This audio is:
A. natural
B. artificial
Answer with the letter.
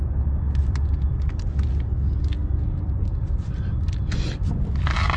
A